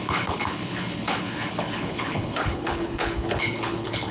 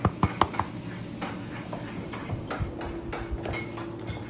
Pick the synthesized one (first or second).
first